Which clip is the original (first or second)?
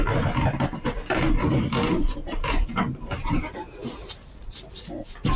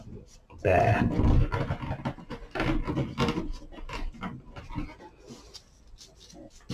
second